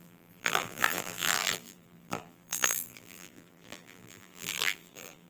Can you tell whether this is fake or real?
fake